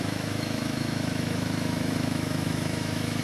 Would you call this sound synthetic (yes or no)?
yes